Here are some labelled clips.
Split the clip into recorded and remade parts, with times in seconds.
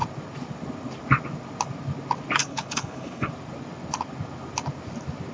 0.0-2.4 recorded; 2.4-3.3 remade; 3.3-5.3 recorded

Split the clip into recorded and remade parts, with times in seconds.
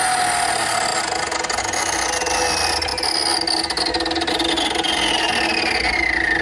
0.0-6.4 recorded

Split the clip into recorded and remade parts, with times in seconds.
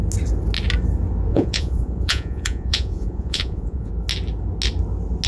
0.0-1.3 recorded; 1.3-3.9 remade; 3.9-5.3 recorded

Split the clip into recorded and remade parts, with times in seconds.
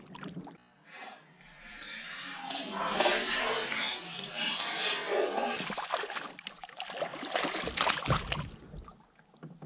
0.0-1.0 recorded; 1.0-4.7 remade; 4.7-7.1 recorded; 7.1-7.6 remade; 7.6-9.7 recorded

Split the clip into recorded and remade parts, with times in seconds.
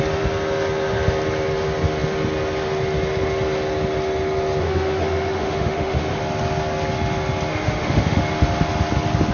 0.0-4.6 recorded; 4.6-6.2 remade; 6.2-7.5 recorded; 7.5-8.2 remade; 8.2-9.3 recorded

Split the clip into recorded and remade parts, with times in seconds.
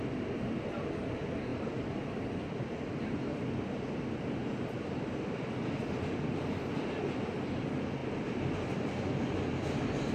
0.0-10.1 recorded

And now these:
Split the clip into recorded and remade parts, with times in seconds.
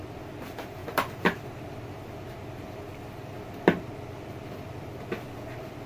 0.0-5.9 recorded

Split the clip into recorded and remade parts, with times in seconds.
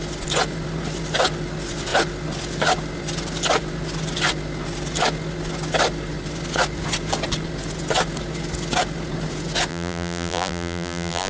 0.0-9.7 recorded; 9.7-11.3 remade